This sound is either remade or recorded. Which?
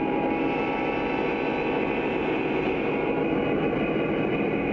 recorded